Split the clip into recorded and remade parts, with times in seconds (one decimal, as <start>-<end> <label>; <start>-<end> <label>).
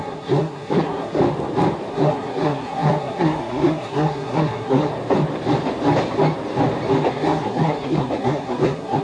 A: 0.0-1.2 remade; 1.2-1.9 recorded; 1.9-4.9 remade; 4.9-7.1 recorded; 7.1-9.0 remade